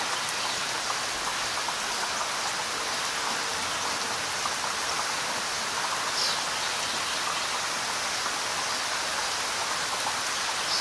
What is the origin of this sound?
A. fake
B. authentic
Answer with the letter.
B